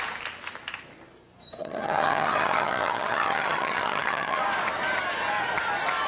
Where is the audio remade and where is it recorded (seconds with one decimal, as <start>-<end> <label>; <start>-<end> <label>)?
0.0-1.6 recorded; 1.6-4.4 remade; 4.4-6.1 recorded